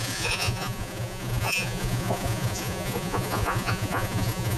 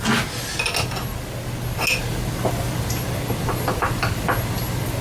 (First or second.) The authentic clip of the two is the second